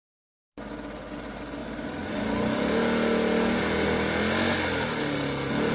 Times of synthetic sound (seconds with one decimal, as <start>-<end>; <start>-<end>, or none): none